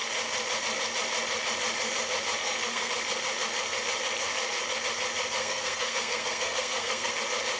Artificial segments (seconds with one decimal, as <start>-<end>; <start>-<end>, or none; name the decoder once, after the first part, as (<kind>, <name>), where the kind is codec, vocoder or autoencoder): 2.4-2.9 (codec, SNAC); 5.4-7.1